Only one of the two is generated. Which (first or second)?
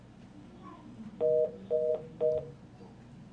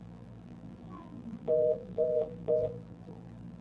second